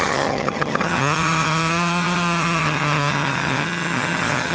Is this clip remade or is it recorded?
remade